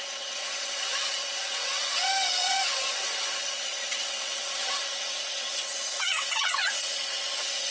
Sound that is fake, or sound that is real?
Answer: fake